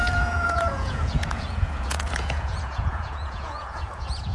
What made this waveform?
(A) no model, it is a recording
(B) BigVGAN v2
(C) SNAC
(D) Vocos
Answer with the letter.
D